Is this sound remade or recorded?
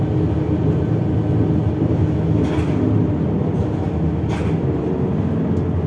recorded